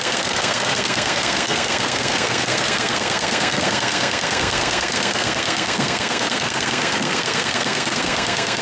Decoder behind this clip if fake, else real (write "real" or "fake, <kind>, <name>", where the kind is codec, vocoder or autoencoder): fake, codec, SNAC